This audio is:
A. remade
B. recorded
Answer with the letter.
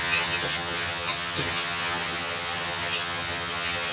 A